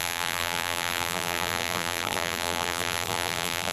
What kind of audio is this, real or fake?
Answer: fake